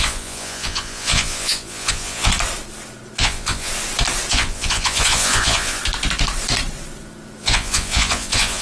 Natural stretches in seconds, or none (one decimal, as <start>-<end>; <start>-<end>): 2.3-3.2; 3.7-4.3; 5.8-7.4

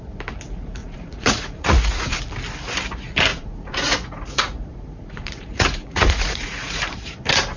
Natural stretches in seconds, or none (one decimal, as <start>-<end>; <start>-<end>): 0.0-0.8; 2.2-3.3; 6.8-7.6

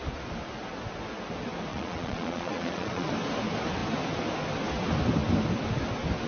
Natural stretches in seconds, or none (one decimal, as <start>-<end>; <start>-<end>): 0.0-1.7; 3.1-6.3

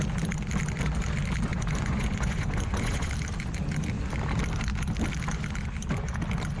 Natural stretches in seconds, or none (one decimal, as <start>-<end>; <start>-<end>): 0.0-1.5; 3.1-6.6

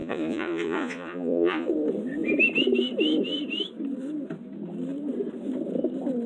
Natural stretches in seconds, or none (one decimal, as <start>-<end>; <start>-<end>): 1.7-6.3

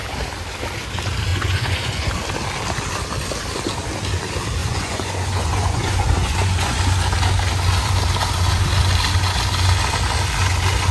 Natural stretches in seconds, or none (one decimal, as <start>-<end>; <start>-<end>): 0.0-1.3; 2.1-4.6; 6.8-10.9